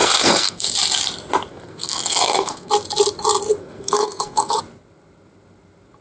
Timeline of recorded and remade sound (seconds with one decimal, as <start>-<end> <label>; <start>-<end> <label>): 0.0-0.7 remade; 0.7-1.5 recorded; 1.5-2.7 remade; 2.7-3.6 recorded; 3.6-4.6 remade; 4.6-6.0 recorded